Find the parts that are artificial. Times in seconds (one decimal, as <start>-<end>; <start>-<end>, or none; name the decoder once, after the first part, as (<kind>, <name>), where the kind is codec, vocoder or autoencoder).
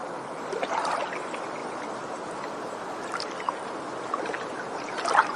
none